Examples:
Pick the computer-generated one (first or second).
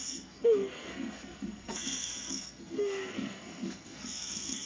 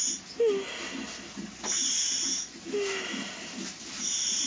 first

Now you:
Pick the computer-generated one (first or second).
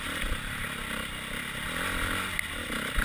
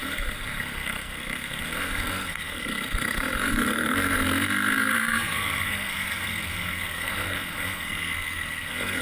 second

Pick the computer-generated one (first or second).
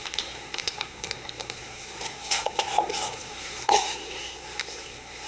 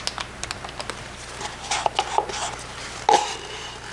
first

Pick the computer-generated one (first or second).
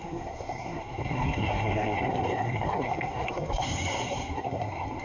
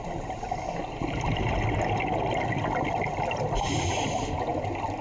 first